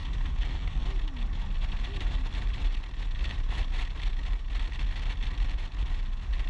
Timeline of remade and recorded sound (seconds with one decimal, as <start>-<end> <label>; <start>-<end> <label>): 0.0-0.8 remade; 0.8-6.5 recorded